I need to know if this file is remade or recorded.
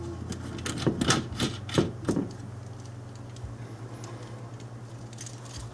recorded